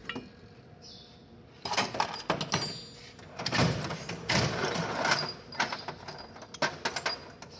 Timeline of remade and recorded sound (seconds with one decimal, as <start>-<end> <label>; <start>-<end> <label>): 0.0-1.2 recorded; 1.2-2.1 remade; 2.1-3.6 recorded; 3.6-5.1 remade; 5.1-7.6 recorded